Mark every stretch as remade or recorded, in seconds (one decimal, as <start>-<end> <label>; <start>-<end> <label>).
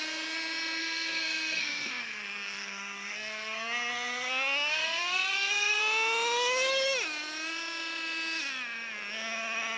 0.0-0.8 recorded; 0.8-5.8 remade; 5.8-9.8 recorded